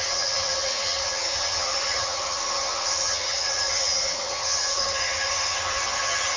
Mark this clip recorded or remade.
remade